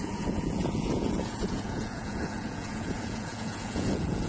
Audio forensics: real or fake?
fake